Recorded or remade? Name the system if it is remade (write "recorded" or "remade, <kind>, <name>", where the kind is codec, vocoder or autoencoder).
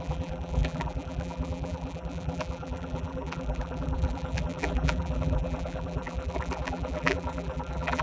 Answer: remade, vocoder, BigVGAN v2